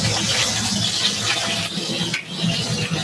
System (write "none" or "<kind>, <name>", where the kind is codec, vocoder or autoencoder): none